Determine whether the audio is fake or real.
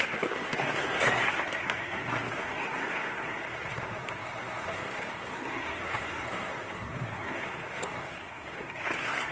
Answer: fake